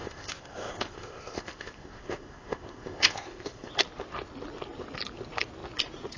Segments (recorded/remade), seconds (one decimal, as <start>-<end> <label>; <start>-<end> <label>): 0.0-3.7 remade; 3.7-6.2 recorded